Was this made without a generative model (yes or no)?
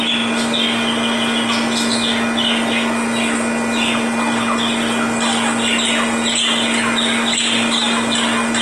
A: yes